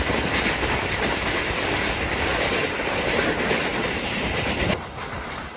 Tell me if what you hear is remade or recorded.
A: recorded